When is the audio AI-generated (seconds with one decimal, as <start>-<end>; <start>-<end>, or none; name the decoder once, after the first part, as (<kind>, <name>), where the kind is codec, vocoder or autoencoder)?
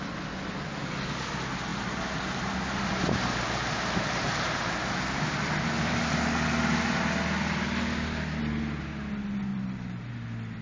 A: 1.7-4.9 (vocoder, BigVGAN v2); 9.5-10.1